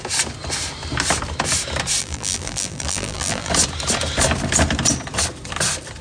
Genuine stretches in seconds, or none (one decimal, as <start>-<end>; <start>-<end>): 0.0-2.0; 3.5-6.0